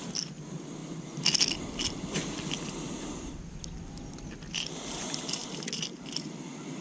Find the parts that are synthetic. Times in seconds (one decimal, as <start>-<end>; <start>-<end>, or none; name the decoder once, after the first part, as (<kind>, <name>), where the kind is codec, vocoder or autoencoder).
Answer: none